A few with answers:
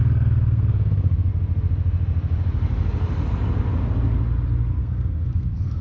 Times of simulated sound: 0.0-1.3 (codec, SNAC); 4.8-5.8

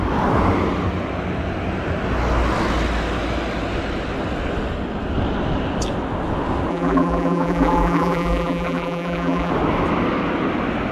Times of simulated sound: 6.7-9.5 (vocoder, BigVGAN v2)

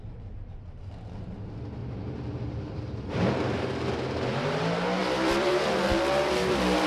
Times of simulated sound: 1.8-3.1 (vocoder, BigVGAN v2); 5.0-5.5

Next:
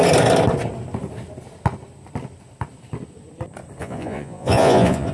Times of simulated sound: 3.8-5.1 (vocoder, Vocos)